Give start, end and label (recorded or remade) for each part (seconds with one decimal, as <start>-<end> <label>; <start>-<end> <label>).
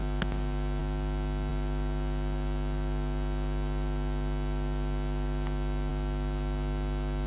0.0-7.3 recorded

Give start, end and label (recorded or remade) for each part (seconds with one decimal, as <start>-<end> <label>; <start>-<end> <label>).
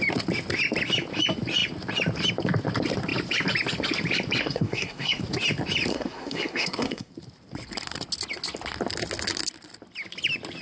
0.0-4.4 recorded; 4.4-5.2 remade; 5.2-5.9 recorded; 5.9-7.1 remade; 7.1-10.6 recorded